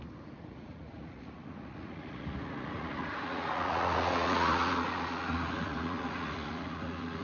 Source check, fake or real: fake